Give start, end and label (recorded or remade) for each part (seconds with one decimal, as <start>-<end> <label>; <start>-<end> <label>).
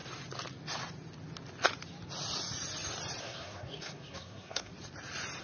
0.0-3.2 recorded; 3.2-4.7 remade; 4.7-5.4 recorded